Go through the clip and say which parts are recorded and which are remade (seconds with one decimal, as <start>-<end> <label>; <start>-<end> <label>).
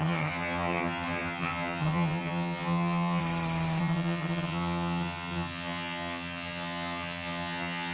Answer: 0.0-3.2 remade; 3.2-3.8 recorded; 3.8-7.9 remade